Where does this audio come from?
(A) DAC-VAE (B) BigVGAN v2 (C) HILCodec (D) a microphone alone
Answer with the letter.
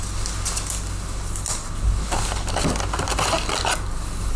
D